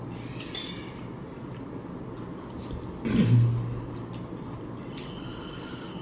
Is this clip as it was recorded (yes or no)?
yes